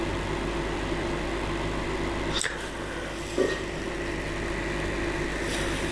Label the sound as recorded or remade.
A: recorded